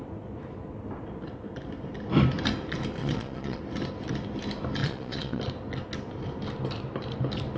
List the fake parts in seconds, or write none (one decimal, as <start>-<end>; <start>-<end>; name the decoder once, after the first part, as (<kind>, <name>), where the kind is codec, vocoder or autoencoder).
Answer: 3.0-3.6 (vocoder, Vocos); 4.8-5.4